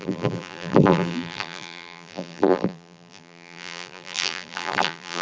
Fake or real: fake